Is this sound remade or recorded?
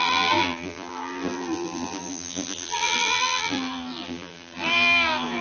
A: remade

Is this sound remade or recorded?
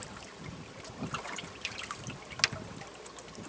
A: recorded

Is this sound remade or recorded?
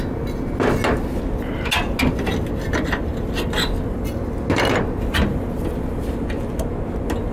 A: recorded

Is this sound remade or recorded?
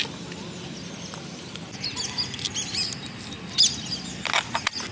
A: recorded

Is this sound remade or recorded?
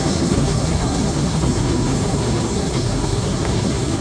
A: remade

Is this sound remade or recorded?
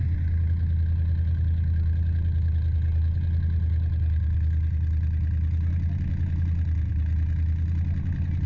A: recorded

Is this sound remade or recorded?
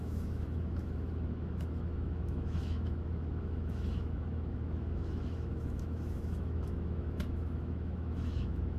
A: remade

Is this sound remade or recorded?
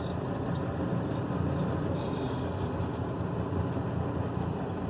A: recorded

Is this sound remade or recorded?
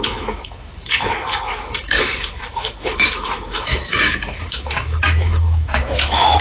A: remade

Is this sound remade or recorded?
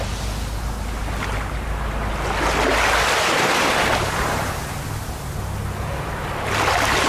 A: recorded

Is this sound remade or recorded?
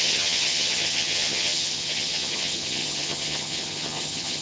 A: remade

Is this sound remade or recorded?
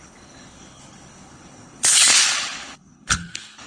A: remade